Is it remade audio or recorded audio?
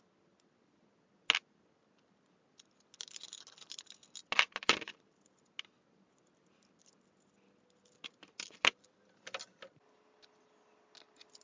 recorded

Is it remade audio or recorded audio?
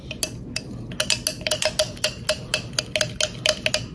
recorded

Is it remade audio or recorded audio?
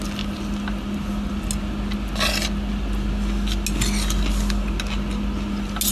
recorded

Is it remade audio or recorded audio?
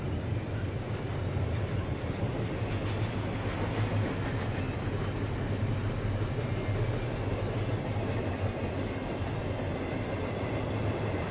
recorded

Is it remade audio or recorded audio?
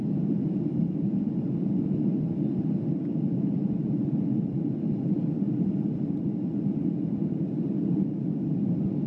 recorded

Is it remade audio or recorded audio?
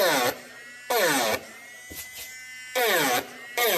recorded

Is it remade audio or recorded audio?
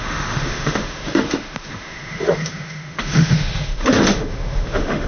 remade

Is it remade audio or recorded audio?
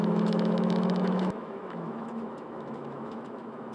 remade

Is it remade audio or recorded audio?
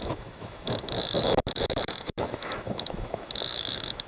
remade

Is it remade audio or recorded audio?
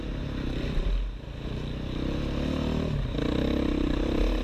recorded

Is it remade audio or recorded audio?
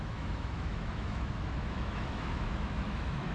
remade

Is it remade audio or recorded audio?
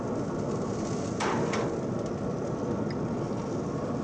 recorded